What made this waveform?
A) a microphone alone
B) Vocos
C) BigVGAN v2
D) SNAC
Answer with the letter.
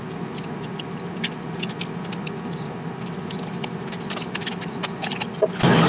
A